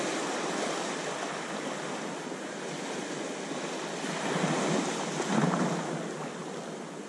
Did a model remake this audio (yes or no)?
no